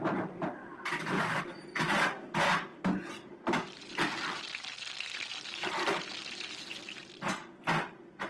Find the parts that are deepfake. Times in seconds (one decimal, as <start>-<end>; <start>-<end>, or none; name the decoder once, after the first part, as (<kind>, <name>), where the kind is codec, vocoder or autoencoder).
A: none